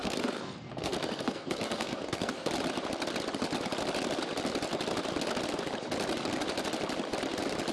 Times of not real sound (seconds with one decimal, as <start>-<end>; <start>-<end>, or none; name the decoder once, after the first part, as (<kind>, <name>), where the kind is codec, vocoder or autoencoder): 0.0-2.5 (codec, SNAC)